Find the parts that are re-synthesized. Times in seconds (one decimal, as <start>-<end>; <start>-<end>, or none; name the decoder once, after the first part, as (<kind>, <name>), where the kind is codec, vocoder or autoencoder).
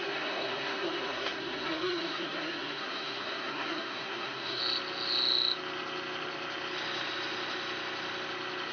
0.0-4.6 (codec, SNAC)